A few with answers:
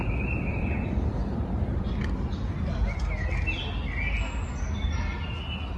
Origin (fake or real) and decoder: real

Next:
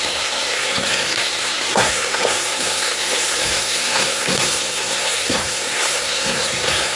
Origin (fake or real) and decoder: fake, codec, SNAC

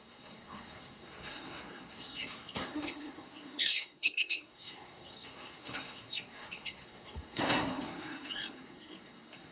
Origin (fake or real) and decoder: fake, codec, SNAC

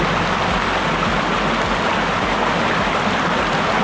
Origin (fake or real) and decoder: real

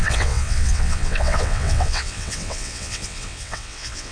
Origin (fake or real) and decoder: fake, vocoder, WaveNeXt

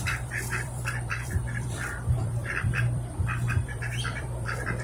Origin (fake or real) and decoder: fake, vocoder, BigVGAN v2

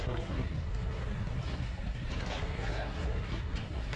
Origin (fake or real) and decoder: fake, codec, SNAC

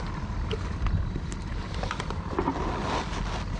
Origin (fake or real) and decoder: real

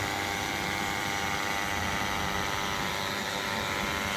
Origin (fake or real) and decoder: real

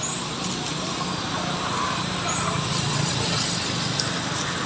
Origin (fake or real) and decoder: real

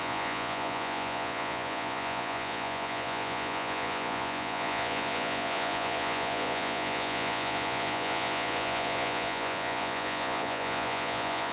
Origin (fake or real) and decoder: fake, vocoder, Vocos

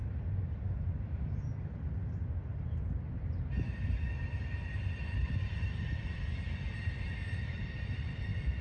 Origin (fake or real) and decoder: real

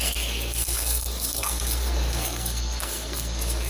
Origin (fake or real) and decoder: fake, codec, SNAC